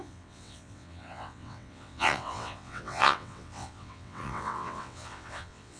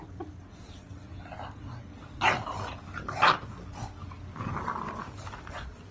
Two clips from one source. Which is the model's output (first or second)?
first